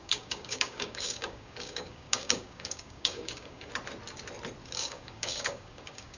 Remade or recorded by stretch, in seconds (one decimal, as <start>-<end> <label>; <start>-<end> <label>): 0.0-3.7 remade; 3.7-4.6 recorded; 4.6-6.2 remade